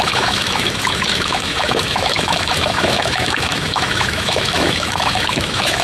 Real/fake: fake